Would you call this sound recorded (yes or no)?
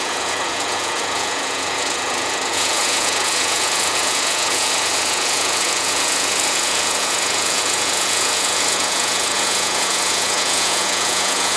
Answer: no